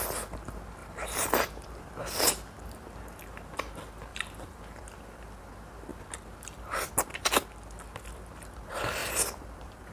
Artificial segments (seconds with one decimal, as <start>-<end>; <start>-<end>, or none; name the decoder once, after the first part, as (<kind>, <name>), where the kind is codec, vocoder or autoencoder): 0.8-1.9 (vocoder, BigVGAN v2); 4.1-5.4; 9.0-9.9